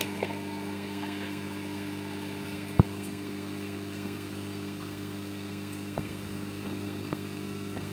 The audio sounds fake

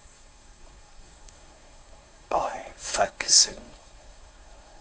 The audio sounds fake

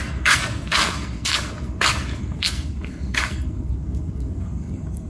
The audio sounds fake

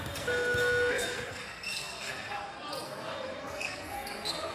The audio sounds fake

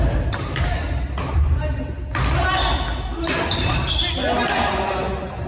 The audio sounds real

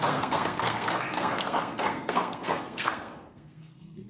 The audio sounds fake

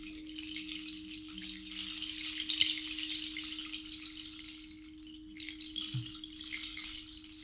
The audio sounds real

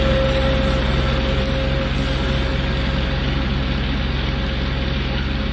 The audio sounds real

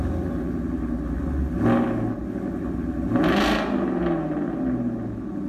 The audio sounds real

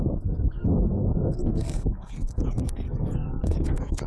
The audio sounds fake